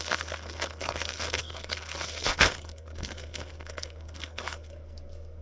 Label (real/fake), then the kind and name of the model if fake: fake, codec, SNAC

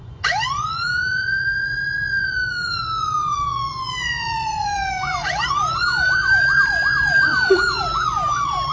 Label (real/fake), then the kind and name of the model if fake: fake, vocoder, Vocos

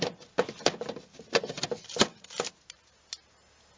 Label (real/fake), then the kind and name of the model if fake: real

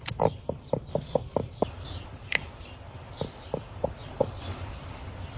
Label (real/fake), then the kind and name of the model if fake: real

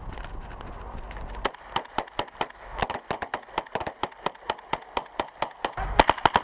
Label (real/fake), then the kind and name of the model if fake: real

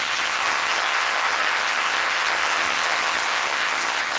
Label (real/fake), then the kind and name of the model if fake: fake, vocoder, HiFi-GAN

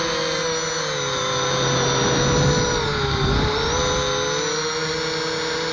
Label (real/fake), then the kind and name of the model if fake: real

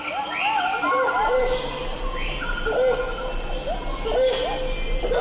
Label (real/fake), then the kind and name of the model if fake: real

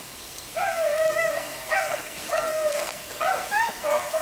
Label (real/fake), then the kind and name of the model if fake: fake, codec, SNAC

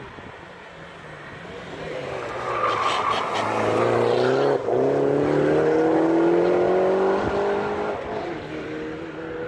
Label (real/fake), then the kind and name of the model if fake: real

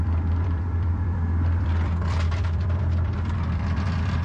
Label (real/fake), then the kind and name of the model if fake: fake, vocoder, BigVGAN v2